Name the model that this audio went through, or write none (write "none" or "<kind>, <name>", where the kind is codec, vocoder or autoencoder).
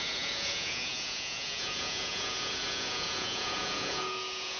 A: vocoder, Vocos